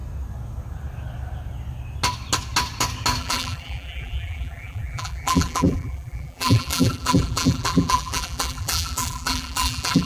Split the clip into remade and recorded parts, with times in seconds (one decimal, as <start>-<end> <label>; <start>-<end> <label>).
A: 0.0-3.2 recorded; 3.2-10.1 remade